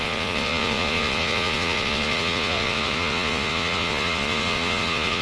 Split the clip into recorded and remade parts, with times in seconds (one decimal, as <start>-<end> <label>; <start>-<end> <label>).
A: 0.0-5.2 remade